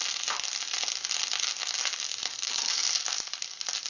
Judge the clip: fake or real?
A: real